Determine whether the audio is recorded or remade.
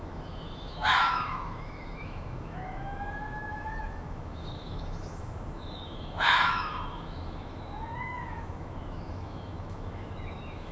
remade